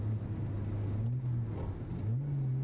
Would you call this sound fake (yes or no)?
no